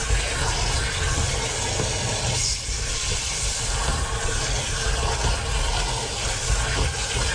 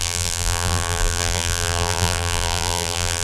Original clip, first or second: first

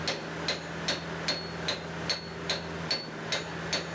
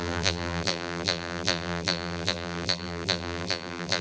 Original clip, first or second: first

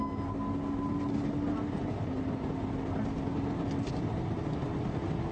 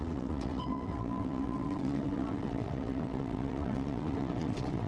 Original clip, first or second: first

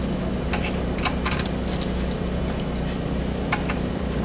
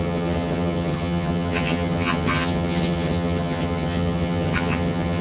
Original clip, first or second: first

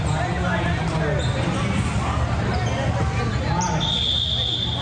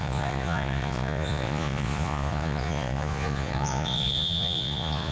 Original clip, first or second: first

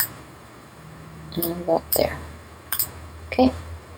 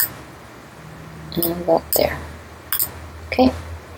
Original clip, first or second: second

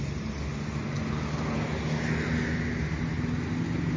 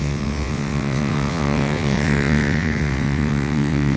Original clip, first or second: first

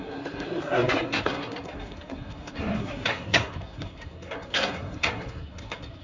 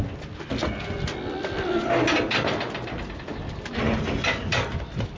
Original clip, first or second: second